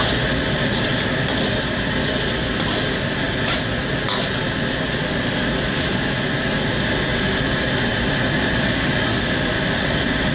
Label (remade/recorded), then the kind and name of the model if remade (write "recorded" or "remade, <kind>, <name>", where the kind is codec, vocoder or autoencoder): recorded